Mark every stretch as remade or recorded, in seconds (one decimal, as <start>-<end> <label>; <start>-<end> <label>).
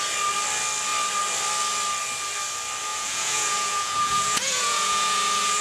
0.0-2.9 recorded; 2.9-5.6 remade